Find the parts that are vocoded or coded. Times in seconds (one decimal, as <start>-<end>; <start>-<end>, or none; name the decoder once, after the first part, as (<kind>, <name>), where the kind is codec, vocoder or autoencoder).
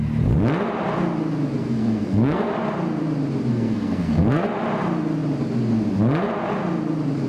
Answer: 1.6-2.5 (codec, SNAC); 3.5-4.5